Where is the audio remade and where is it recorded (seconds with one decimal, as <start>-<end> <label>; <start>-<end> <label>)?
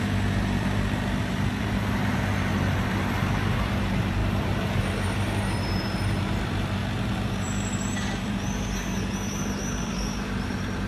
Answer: 0.0-10.9 remade